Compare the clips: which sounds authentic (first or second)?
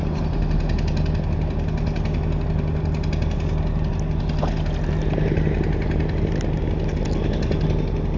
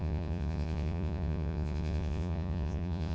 first